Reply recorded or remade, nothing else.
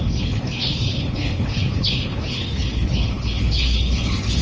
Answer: remade